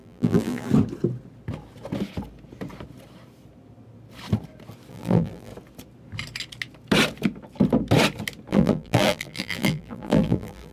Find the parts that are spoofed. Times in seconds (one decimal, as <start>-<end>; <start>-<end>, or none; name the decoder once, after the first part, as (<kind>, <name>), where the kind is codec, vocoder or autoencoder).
0.0-0.7 (vocoder, BigVGAN v2); 4.9-5.5; 8.5-10.7